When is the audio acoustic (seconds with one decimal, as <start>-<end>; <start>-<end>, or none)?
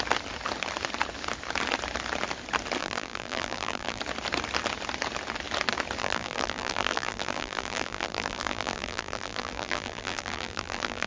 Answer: 0.0-2.8; 4.0-6.0